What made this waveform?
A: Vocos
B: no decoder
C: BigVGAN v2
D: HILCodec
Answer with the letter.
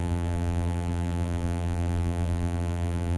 C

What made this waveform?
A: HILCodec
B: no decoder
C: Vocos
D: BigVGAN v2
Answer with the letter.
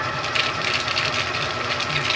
B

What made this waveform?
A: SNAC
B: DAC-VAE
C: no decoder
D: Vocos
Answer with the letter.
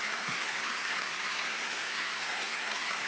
A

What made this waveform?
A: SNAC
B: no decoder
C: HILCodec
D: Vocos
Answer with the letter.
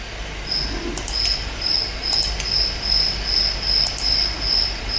B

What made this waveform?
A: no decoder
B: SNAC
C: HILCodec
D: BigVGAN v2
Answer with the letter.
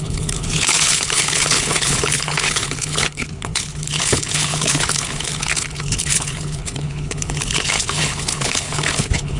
C